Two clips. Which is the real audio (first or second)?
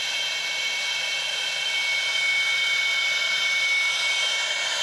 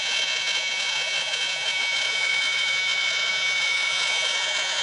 first